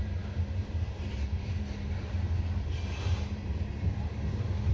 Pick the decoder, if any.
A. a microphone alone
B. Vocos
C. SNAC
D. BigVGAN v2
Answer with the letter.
D